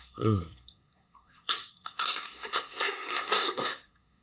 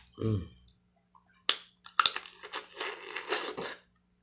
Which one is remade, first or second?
first